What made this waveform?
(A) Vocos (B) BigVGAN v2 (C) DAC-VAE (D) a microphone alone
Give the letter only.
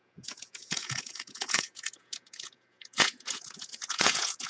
A